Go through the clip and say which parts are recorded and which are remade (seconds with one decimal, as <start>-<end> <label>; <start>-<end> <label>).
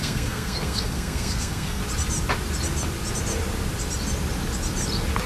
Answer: 0.0-1.8 remade; 1.8-5.3 recorded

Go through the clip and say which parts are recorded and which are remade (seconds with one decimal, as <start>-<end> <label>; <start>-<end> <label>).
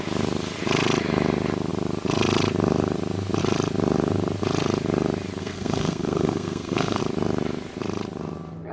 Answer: 0.0-5.4 recorded; 5.4-7.0 remade; 7.0-8.7 recorded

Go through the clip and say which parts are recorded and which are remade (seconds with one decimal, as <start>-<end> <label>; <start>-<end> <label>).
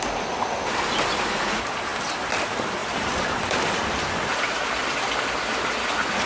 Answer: 0.0-6.3 recorded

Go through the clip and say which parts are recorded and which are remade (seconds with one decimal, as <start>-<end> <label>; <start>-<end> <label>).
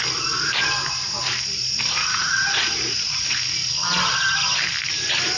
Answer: 0.0-2.0 recorded; 2.0-3.2 remade; 3.2-5.4 recorded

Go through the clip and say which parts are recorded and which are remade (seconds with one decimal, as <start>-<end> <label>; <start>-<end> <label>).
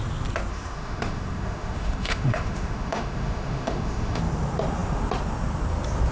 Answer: 0.0-0.5 recorded; 0.5-4.2 remade; 4.2-6.1 recorded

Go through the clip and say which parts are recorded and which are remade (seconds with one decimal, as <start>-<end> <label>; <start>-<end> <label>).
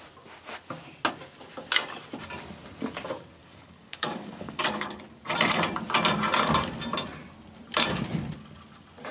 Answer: 0.0-3.4 recorded; 3.4-5.0 remade; 5.0-9.1 recorded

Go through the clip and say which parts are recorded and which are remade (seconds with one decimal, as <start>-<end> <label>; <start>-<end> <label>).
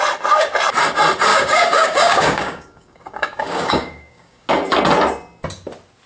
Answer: 0.0-1.3 recorded; 1.3-4.5 remade; 4.5-6.1 recorded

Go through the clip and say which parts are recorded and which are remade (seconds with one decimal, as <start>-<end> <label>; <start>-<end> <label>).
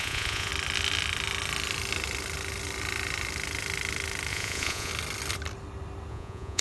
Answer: 0.0-0.5 remade; 0.5-4.3 recorded; 4.3-4.9 remade; 4.9-6.1 recorded; 6.1-6.6 remade